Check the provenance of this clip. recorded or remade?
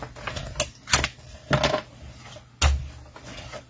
recorded